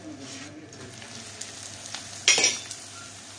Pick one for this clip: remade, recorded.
recorded